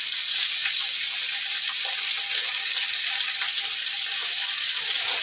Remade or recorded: recorded